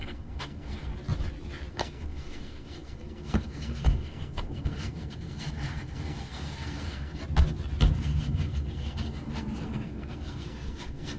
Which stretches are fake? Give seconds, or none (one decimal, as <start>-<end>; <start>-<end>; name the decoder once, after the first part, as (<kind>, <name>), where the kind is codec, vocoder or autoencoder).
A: 0.0-0.9 (codec, SNAC); 1.7-7.2; 7.9-11.2